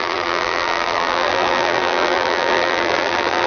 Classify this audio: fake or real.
fake